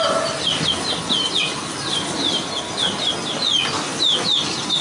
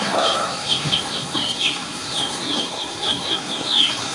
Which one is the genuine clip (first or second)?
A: first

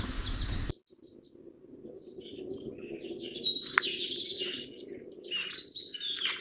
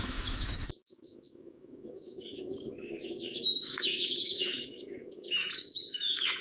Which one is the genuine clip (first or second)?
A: first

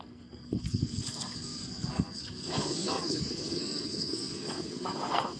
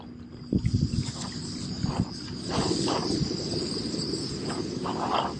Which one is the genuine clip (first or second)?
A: second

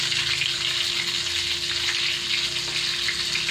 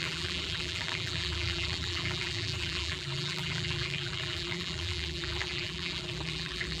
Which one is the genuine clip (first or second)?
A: first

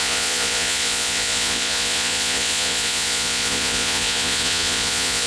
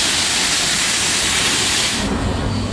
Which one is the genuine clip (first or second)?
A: second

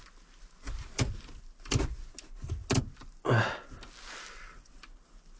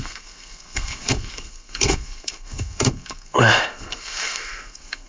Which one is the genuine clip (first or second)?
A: first